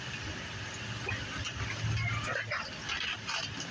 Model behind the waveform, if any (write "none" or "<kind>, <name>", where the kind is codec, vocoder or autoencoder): none